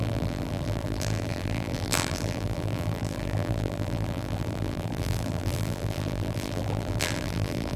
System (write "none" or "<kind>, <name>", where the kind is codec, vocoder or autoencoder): vocoder, BigVGAN v2